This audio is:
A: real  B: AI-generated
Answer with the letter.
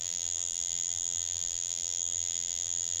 B